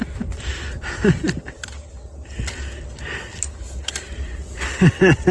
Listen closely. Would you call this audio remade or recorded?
recorded